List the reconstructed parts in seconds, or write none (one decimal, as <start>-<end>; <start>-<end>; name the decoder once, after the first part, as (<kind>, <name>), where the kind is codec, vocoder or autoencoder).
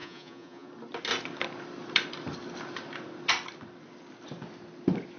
0.0-0.7 (vocoder, Vocos)